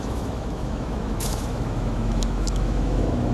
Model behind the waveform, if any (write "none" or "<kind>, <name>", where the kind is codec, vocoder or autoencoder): autoencoder, DAC-VAE